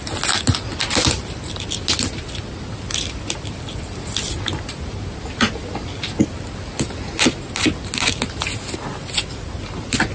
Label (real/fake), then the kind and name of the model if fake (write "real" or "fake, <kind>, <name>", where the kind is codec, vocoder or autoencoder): real